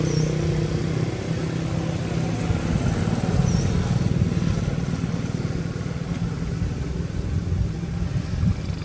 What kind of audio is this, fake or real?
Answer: real